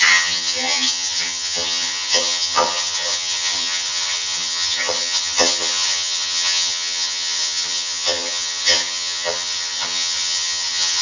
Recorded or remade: remade